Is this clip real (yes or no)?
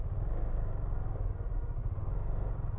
yes